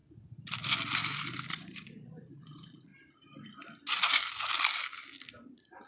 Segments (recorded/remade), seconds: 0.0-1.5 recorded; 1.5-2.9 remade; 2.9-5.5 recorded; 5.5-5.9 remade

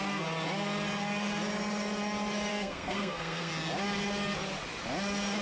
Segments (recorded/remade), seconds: 0.0-2.5 recorded; 2.5-3.5 remade; 3.5-5.4 recorded

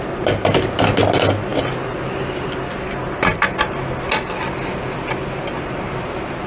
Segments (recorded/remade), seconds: 0.0-6.5 recorded

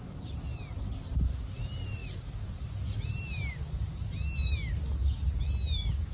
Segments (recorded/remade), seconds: 0.0-6.1 recorded

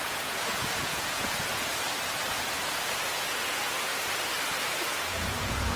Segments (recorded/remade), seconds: 0.0-1.7 remade; 1.7-2.3 recorded; 2.3-3.9 remade; 3.9-4.9 recorded; 4.9-5.8 remade

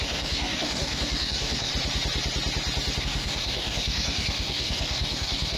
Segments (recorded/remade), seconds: 0.0-1.7 remade; 1.7-3.0 recorded; 3.0-5.6 remade

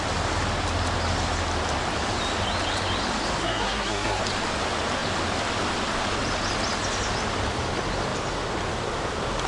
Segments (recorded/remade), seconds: 0.0-3.4 recorded; 3.4-4.2 remade; 4.2-9.5 recorded